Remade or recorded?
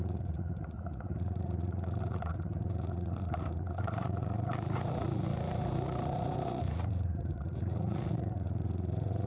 remade